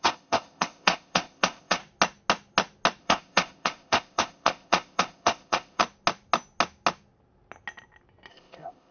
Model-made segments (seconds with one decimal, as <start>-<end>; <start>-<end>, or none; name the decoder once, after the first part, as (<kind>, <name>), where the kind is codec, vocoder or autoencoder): 0.0-1.8 (codec, ZipCodec); 3.0-5.8; 8.3-8.9